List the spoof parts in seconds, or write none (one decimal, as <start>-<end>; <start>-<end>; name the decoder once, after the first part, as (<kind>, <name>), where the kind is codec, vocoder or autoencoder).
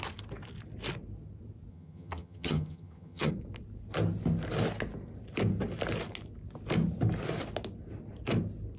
1.7-3.3 (vocoder, HiFi-GAN)